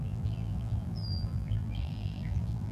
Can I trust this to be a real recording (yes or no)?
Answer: no